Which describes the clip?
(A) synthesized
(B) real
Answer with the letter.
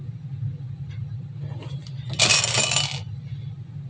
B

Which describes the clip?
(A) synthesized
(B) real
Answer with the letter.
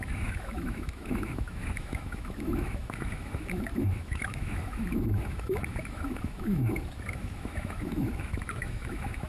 A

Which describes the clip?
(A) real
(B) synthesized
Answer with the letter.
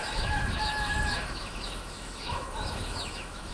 B